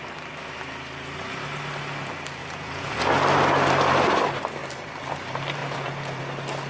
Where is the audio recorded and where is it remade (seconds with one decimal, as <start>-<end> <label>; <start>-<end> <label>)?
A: 0.0-2.4 recorded; 2.4-3.0 remade; 3.0-5.6 recorded; 5.6-6.2 remade; 6.2-6.7 recorded